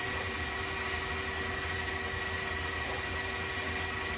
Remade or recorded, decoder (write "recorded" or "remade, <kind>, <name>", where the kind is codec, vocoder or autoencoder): recorded